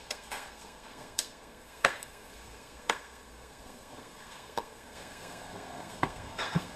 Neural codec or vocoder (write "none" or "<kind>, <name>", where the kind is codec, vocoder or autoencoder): codec, SNAC